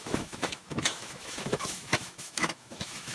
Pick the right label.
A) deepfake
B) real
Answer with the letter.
A